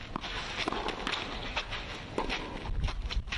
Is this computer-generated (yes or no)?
no